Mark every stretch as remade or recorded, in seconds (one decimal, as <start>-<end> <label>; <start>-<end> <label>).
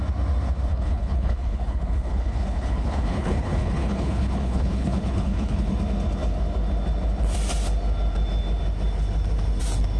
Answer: 0.0-0.7 recorded; 0.7-5.7 remade; 5.7-10.0 recorded